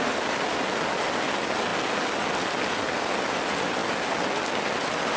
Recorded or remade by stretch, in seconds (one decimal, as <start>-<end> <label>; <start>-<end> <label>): 0.0-5.2 recorded